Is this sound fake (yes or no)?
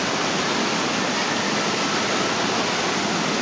no